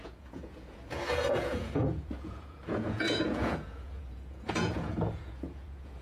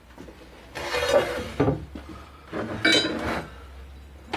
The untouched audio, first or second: second